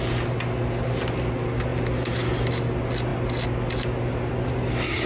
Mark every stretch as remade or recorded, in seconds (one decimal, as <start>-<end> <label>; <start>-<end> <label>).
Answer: 0.0-5.1 recorded